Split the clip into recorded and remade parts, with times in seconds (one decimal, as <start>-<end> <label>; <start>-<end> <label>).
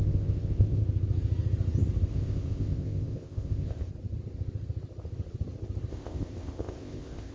0.0-0.8 remade; 0.8-2.1 recorded; 2.1-3.9 remade; 3.9-5.9 recorded; 5.9-7.3 remade